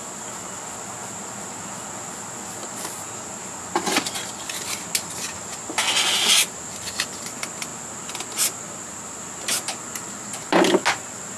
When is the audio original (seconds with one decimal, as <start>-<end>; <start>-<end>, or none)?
0.0-11.4